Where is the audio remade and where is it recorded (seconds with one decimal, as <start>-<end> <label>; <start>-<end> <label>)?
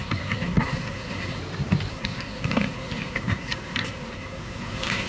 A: 0.0-1.4 remade; 1.4-1.9 recorded; 1.9-5.1 remade